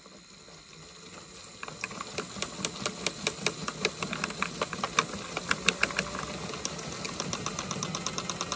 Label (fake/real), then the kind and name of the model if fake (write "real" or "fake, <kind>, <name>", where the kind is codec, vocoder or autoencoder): real